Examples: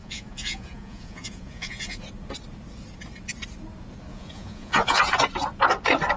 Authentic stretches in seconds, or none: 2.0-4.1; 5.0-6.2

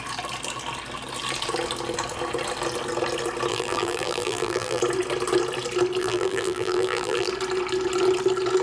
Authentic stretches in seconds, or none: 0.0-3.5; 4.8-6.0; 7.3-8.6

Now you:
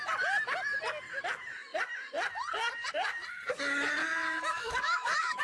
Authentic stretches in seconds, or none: 0.0-4.0

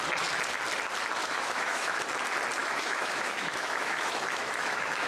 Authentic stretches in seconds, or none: 0.0-1.2; 2.0-2.6

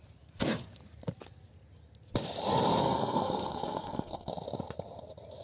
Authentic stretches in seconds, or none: 0.0-2.8; 4.3-5.4